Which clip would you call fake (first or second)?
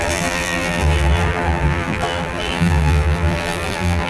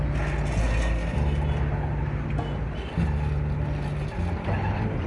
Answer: first